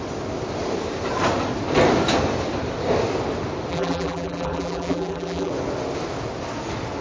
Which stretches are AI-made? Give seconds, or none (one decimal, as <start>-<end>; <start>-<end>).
3.7-5.5